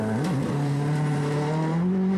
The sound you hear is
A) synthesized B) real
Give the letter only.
B